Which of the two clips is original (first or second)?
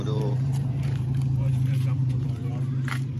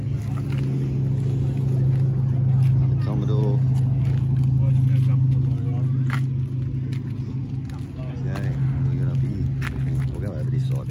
second